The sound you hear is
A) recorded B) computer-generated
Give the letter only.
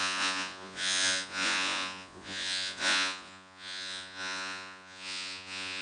B